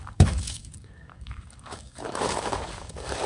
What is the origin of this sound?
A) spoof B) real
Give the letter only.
A